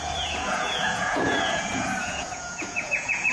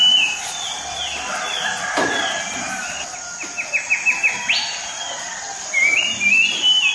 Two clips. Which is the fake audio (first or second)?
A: first